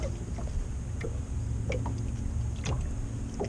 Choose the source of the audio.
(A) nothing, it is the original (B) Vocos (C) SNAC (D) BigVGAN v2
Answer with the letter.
A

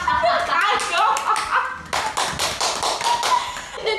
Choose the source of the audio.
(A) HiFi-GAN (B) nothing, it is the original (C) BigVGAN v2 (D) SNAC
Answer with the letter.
B